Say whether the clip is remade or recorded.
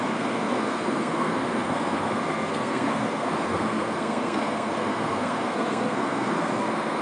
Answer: remade